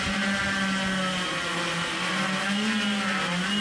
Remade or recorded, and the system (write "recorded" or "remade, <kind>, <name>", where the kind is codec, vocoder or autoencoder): recorded